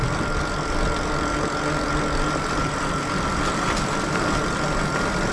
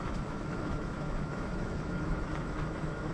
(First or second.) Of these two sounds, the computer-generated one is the second